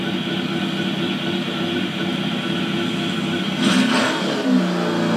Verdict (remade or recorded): recorded